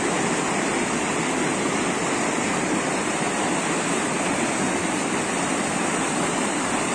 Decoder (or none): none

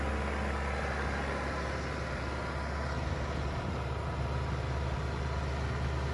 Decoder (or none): none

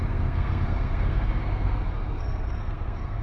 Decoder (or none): codec, SNAC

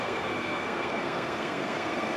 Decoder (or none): codec, SNAC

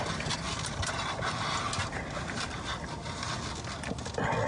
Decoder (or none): none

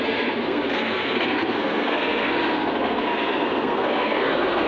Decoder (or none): codec, SNAC